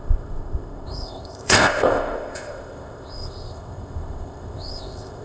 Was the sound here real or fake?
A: fake